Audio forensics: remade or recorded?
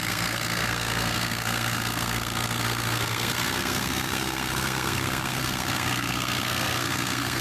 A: remade